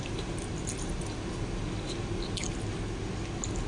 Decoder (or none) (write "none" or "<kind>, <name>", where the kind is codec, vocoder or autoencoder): none